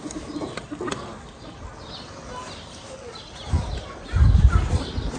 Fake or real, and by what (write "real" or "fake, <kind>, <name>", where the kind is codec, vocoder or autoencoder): real